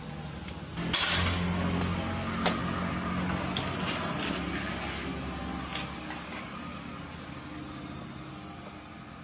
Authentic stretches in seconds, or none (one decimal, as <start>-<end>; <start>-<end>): 0.0-9.2